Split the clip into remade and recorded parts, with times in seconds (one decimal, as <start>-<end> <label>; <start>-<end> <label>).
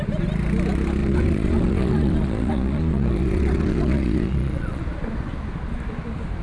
0.0-1.0 recorded; 1.0-4.8 remade; 4.8-6.4 recorded